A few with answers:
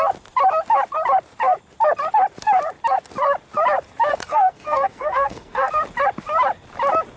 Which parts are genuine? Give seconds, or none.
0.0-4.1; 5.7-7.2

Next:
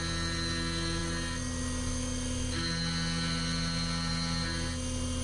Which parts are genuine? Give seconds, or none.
0.0-5.2

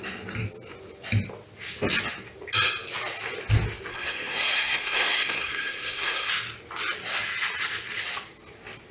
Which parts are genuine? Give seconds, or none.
0.0-3.9; 6.3-8.9

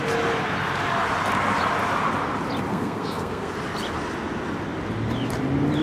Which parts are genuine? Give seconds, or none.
0.0-2.7; 3.5-5.8